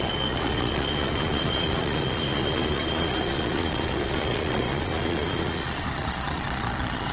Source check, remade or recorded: remade